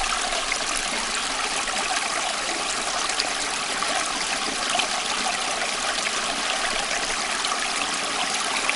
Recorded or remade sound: recorded